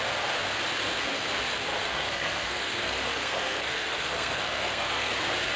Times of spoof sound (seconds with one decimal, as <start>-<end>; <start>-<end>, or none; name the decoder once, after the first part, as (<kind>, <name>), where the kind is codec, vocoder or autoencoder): 1.7-5.1 (codec, SNAC)